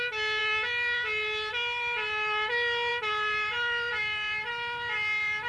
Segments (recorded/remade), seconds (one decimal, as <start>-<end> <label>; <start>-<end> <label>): 0.0-5.5 recorded